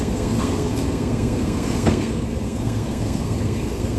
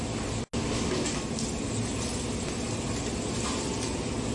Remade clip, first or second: first